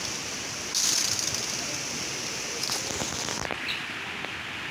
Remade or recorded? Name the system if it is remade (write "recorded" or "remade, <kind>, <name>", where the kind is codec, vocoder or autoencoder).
recorded